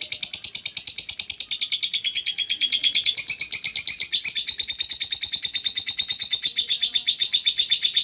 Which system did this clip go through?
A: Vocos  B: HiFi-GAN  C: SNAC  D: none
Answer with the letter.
D